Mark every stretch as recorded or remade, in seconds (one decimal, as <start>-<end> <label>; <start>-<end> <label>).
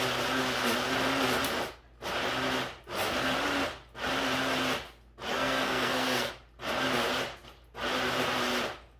0.0-5.3 recorded; 5.3-6.3 remade; 6.3-9.0 recorded